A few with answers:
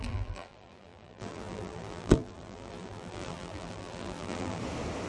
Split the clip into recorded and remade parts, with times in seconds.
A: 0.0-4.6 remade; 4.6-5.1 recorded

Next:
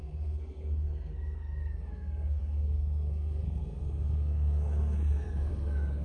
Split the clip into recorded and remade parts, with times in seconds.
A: 0.0-6.0 remade

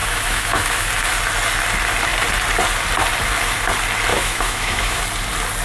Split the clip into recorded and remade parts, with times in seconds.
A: 0.0-0.9 remade; 0.9-4.1 recorded; 4.1-5.0 remade; 5.0-5.6 recorded